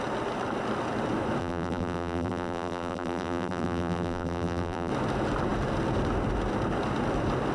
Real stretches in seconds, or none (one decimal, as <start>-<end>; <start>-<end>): 0.0-1.4; 4.9-7.5